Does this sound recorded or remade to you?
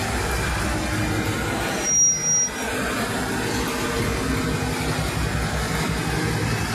recorded